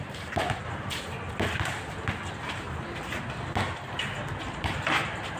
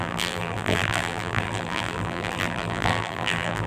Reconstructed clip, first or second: second